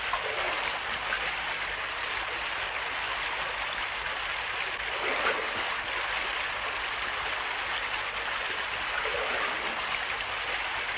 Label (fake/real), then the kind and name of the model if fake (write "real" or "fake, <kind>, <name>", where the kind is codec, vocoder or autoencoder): real